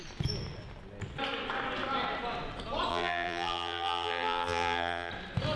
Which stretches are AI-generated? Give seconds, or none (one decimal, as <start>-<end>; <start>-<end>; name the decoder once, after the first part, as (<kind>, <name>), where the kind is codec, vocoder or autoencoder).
2.9-5.1 (vocoder, BigVGAN v2)